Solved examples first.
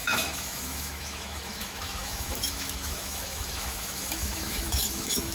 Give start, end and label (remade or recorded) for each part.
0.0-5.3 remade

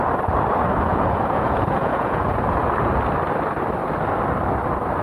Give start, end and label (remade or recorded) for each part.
0.0-0.9 recorded; 0.9-2.9 remade; 2.9-5.0 recorded

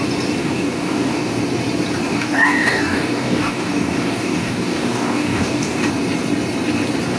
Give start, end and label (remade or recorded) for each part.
0.0-0.4 recorded; 0.4-1.4 remade; 1.4-2.1 recorded; 2.1-5.9 remade; 5.9-7.2 recorded

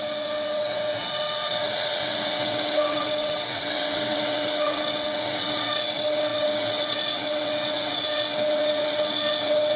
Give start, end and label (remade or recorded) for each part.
0.0-9.8 remade

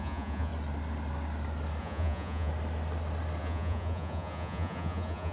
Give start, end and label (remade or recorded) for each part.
0.0-0.5 remade; 0.5-1.8 recorded; 1.8-2.5 remade; 2.5-3.4 recorded; 3.4-5.3 remade

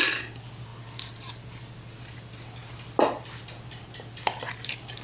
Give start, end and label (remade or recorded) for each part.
0.0-0.7 recorded; 0.7-1.3 remade; 1.3-5.0 recorded